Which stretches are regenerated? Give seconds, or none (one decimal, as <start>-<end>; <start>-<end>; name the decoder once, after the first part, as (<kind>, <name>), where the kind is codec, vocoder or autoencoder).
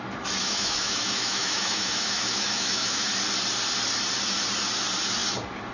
0.4-3.1 (autoencoder, DAC-VAE)